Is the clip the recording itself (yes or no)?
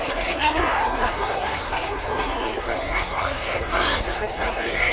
no